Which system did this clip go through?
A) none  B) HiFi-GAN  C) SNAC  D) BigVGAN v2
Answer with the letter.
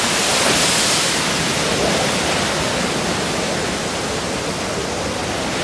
A